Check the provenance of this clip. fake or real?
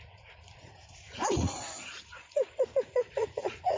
fake